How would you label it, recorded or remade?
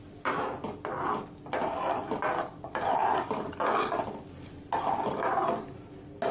recorded